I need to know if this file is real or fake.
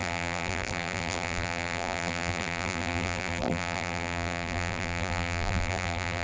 fake